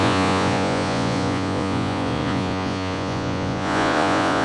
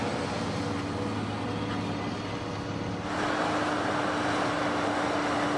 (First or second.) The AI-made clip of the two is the first